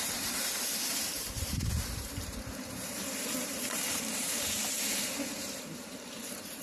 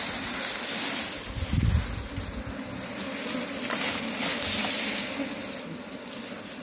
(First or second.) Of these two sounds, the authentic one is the second